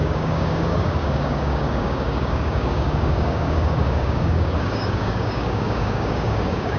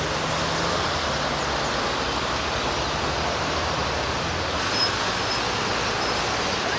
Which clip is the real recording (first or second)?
second